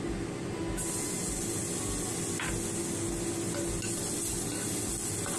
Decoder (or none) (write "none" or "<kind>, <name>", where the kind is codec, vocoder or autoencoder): none